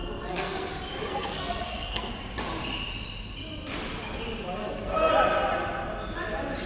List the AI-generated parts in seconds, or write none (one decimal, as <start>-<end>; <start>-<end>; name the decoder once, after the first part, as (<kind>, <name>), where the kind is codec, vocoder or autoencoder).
0.0-0.7 (codec, SNAC); 1.1-2.1; 4.6-5.1